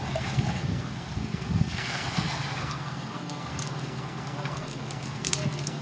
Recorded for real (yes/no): no